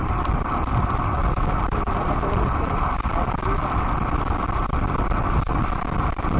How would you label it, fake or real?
real